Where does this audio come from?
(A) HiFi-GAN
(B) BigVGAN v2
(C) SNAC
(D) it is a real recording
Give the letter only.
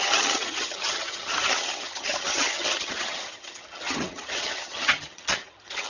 A